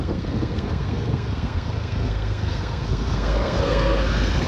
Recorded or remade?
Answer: remade